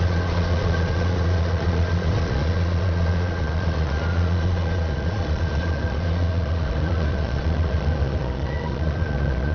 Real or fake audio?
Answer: fake